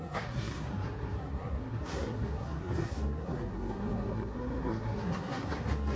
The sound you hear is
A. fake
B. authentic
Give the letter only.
A